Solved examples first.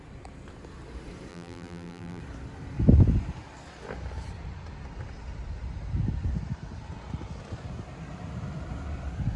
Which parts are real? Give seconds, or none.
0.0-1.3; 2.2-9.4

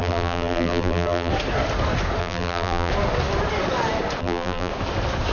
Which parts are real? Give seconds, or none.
1.3-2.2; 2.9-4.2; 4.7-5.3

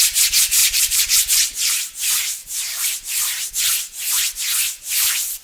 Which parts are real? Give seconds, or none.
0.0-0.6; 1.7-2.4; 3.7-5.4

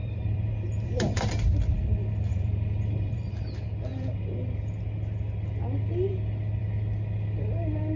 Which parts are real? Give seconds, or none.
1.5-2.3; 3.5-3.9; 4.5-8.0

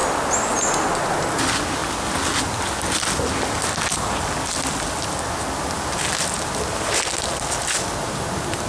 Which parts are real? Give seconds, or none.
0.0-8.7